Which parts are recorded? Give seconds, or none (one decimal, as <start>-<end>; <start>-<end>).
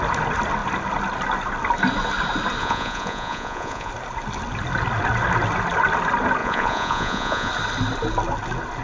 0.0-2.6; 3.9-6.4; 7.5-8.8